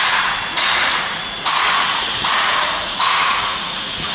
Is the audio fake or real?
fake